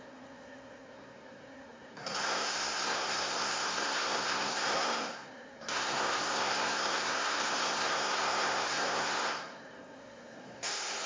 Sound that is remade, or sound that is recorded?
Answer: remade